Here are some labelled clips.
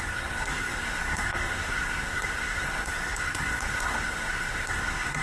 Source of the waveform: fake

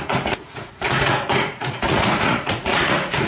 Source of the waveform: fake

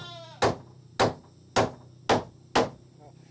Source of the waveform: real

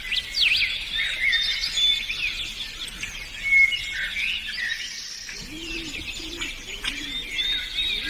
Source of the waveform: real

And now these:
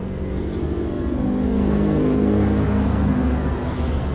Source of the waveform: fake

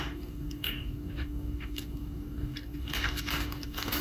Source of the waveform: fake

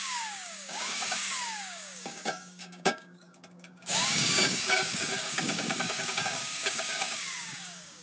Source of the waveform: fake